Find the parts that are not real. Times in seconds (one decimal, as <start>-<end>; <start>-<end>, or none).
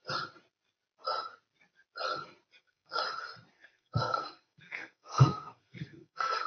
2.6-3.0; 3.5-6.5